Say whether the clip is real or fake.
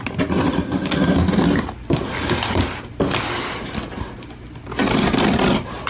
real